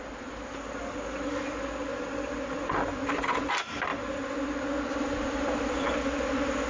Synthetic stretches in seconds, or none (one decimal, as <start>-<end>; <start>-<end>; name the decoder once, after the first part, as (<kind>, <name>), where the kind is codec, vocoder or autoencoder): none